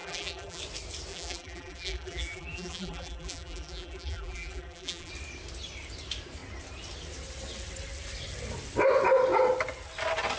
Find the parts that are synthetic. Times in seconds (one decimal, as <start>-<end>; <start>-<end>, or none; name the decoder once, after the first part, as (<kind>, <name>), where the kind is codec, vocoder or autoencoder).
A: 0.0-0.6 (vocoder, BigVGAN v2); 1.1-5.1